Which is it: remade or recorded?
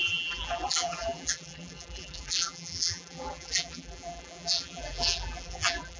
remade